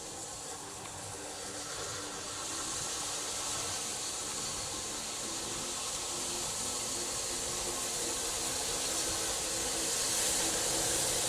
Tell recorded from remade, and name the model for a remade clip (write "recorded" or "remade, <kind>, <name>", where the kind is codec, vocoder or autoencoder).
recorded